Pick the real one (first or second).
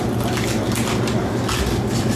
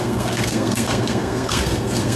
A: first